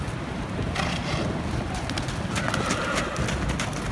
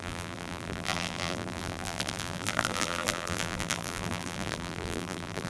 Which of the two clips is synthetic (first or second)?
second